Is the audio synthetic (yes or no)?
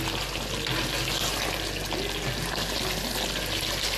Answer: no